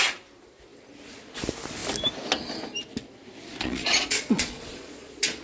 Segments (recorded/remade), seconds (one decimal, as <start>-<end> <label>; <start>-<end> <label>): 0.0-3.5 recorded; 3.5-5.4 remade